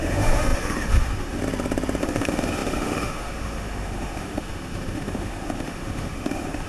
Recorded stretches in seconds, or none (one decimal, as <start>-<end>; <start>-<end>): 1.4-2.0